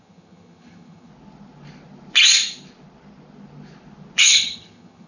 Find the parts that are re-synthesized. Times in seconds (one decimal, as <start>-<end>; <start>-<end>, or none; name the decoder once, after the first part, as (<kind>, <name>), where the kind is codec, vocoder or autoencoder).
0.0-1.1 (vocoder, HiFi-GAN); 4.2-5.1